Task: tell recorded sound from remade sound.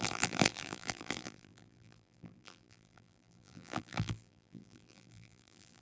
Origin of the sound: remade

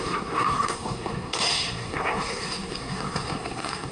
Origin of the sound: remade